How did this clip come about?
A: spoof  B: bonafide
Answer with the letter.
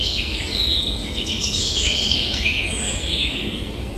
A